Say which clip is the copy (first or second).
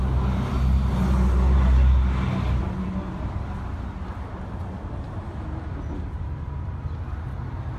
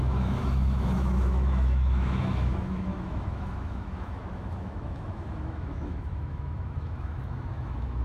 second